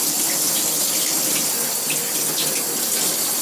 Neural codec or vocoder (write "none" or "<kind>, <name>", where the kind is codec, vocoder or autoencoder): none